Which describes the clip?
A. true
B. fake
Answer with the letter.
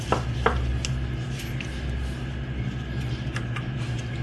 A